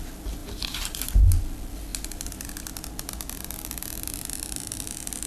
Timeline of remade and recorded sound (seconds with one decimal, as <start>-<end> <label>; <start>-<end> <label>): 0.0-0.4 recorded; 0.4-1.0 remade; 1.0-5.3 recorded